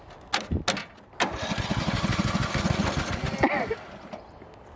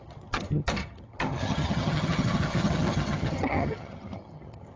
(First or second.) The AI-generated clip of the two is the second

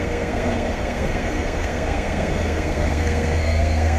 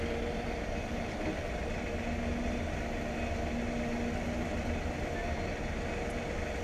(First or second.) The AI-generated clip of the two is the first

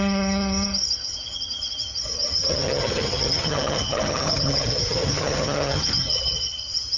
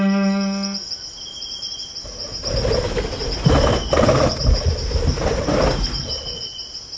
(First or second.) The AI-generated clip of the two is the first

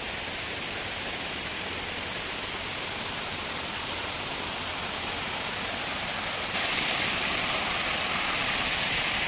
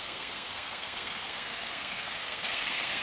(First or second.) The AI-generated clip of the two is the second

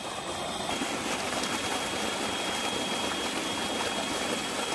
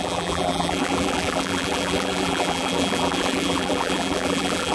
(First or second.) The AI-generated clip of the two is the second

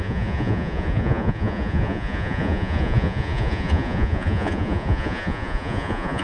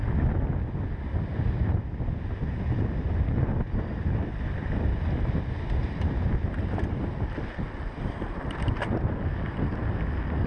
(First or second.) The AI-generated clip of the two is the first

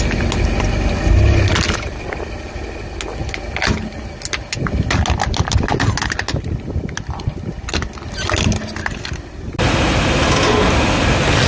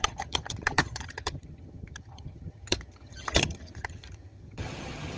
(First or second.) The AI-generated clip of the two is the second